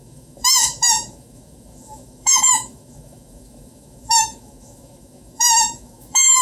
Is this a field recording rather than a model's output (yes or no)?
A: no